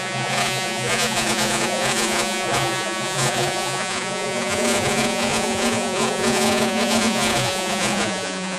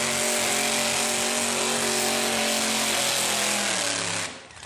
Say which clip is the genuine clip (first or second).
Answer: second